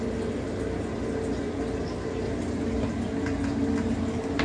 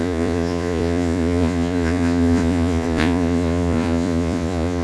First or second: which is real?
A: first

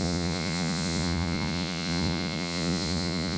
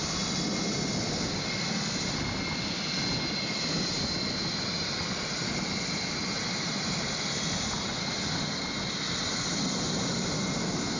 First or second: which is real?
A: second